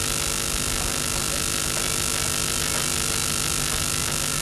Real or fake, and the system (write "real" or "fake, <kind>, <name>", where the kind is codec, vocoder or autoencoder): real